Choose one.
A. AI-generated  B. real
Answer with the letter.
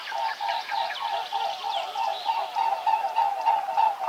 A